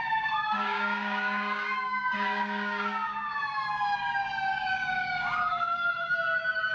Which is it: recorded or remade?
remade